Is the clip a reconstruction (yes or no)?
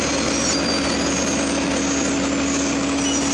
no